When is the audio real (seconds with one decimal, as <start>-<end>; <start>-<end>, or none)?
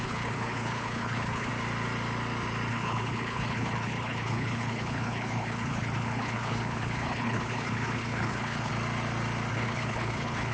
1.5-2.7; 8.7-9.5